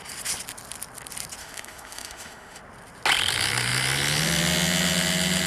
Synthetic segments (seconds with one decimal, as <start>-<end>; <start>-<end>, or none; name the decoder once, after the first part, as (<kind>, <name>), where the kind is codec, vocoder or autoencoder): 1.4-2.6 (autoencoder, DAC-VAE)